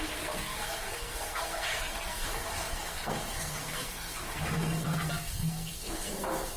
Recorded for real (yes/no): no